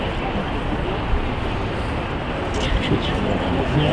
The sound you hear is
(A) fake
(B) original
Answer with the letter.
B